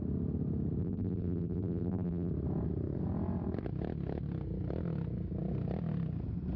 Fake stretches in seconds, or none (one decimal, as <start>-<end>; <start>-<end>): 0.8-2.3